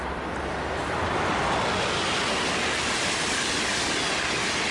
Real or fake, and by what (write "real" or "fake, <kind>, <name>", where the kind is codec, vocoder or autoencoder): real